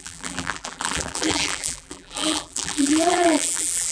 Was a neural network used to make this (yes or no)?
yes